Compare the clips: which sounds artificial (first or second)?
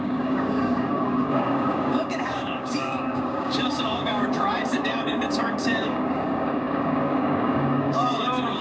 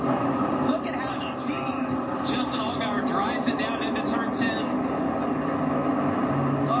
first